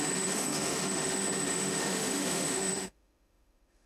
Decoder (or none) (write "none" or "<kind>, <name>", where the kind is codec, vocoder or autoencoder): autoencoder, DAC-VAE